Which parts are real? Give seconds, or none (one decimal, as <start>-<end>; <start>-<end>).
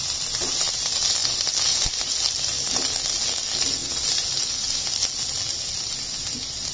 0.0-6.7